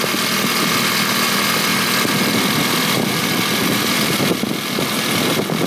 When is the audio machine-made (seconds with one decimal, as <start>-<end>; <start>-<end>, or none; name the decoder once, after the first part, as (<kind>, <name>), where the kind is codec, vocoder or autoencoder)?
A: 1.7-4.2 (vocoder, BigVGAN v2)